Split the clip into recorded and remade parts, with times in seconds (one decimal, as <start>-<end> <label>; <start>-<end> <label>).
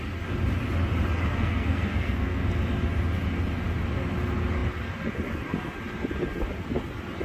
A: 0.0-1.3 recorded; 1.3-2.5 remade; 2.5-7.2 recorded